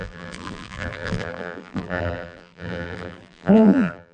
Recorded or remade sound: remade